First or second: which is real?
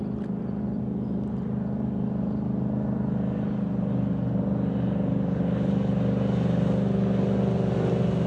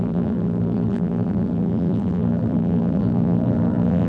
first